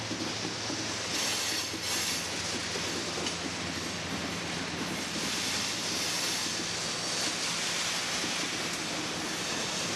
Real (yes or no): yes